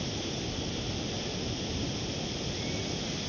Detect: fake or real real